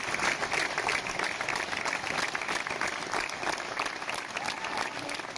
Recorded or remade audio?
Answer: recorded